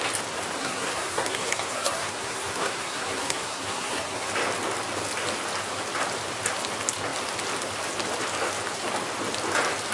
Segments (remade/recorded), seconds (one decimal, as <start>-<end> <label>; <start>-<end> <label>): 0.0-0.6 recorded; 0.6-4.3 remade; 4.3-9.9 recorded